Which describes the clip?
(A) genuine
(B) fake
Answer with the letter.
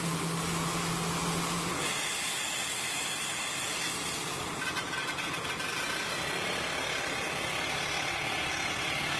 A